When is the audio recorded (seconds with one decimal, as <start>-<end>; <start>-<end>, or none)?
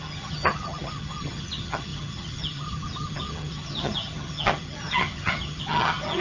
none